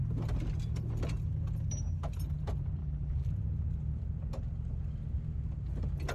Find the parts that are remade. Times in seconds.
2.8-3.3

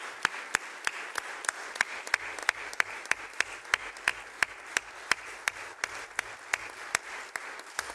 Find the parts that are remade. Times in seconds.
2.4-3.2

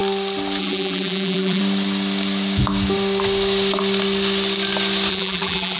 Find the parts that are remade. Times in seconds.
0.6-1.6; 5.1-5.8